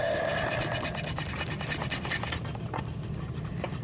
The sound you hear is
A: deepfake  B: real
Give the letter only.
B